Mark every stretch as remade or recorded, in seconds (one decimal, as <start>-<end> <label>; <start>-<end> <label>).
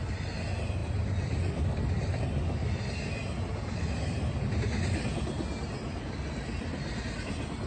0.0-0.8 recorded; 0.8-2.2 remade; 2.2-7.7 recorded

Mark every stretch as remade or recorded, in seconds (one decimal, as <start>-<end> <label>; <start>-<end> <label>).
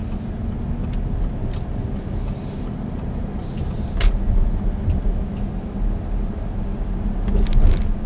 0.0-8.1 recorded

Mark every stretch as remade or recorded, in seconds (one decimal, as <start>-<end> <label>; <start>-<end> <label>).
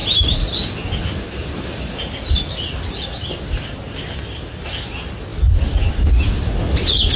0.0-7.2 recorded